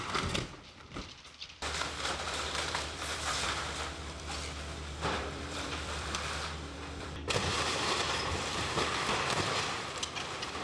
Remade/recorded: remade